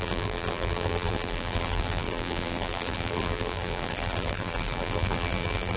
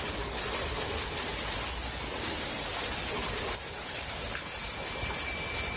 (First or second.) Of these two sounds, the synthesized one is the first